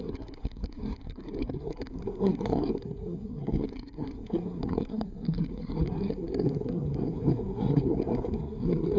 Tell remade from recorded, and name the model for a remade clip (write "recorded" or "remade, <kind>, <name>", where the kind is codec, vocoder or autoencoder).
remade, codec, SNAC